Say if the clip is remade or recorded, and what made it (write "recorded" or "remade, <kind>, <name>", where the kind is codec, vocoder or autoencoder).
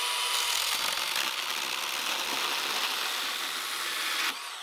recorded